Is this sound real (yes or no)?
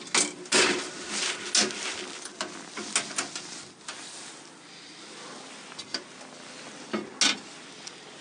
yes